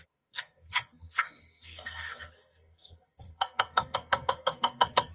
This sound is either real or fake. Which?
fake